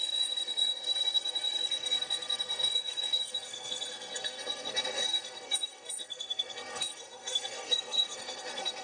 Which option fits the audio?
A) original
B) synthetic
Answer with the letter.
B